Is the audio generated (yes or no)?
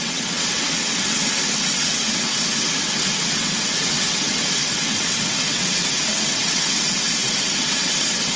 yes